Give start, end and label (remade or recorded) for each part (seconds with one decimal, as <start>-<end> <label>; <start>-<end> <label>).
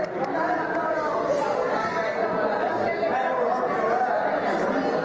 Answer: 0.0-2.2 recorded; 2.2-2.7 remade; 2.7-5.0 recorded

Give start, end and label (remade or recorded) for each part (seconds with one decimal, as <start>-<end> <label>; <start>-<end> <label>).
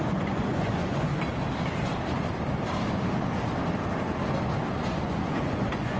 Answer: 0.0-1.1 remade; 1.1-4.7 recorded; 4.7-6.0 remade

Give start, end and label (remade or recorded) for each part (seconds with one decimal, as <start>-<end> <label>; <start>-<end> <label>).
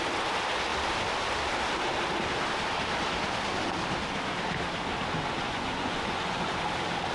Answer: 0.0-5.4 recorded; 5.4-6.6 remade; 6.6-7.1 recorded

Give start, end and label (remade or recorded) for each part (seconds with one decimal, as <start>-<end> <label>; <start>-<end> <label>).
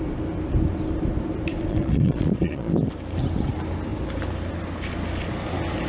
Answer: 0.0-1.7 recorded; 1.7-2.7 remade; 2.7-5.9 recorded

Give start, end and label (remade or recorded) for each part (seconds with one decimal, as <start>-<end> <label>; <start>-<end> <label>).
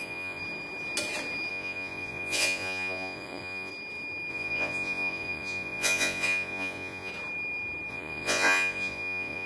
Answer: 0.0-0.4 remade; 0.4-1.5 recorded; 1.5-3.7 remade; 3.7-4.3 recorded; 4.3-7.1 remade; 7.1-7.9 recorded; 7.9-9.5 remade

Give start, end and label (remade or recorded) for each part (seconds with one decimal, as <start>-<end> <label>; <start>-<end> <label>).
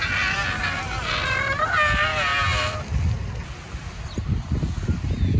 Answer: 0.0-5.4 recorded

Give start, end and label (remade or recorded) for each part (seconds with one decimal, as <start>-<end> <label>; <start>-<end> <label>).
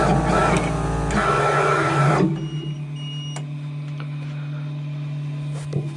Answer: 0.0-6.0 recorded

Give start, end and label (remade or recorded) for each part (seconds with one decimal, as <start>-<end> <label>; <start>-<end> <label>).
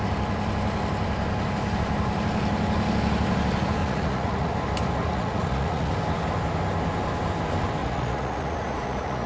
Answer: 0.0-3.8 recorded; 3.8-4.5 remade; 4.5-5.0 recorded; 5.0-5.9 remade; 5.9-7.8 recorded; 7.8-9.3 remade